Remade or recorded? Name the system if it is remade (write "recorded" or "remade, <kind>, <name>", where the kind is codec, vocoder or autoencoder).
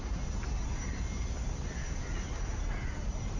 recorded